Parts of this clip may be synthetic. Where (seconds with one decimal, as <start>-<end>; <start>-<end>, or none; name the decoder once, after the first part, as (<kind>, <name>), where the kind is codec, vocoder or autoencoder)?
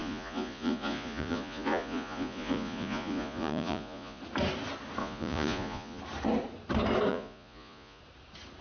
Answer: 0.0-4.2 (vocoder, Vocos); 5.0-6.0; 7.1-8.0